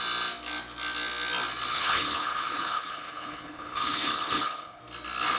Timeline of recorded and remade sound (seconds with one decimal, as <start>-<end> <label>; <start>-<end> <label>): 0.0-1.7 recorded; 1.7-4.8 remade; 4.8-5.4 recorded